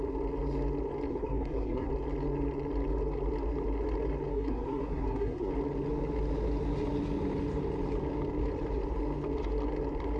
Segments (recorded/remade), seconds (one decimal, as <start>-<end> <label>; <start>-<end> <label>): 0.0-1.1 recorded; 1.1-1.9 remade; 1.9-4.3 recorded; 4.3-5.5 remade; 5.5-10.2 recorded